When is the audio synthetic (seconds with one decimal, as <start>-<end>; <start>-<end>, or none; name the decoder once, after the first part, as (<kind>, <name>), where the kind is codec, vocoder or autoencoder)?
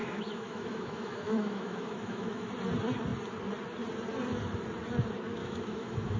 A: 0.0-2.5 (autoencoder, DAC-VAE); 5.4-6.2